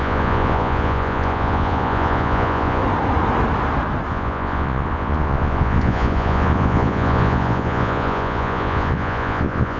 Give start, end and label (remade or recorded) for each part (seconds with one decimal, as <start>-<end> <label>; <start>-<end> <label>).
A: 0.0-2.8 remade; 2.8-4.1 recorded; 4.1-9.8 remade